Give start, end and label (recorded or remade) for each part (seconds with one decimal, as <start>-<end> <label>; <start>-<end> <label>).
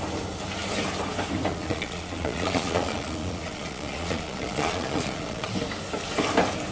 0.0-1.5 recorded; 1.5-5.5 remade; 5.5-6.7 recorded